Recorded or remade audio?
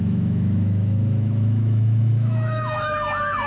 remade